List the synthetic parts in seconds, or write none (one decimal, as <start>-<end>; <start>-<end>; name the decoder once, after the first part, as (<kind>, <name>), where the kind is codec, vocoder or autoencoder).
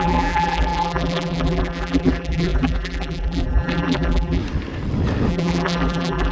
0.0-4.4 (vocoder, BigVGAN v2); 5.3-6.3